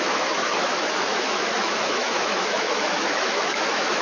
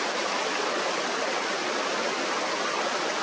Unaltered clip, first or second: second